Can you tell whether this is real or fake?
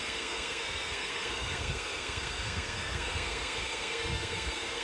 fake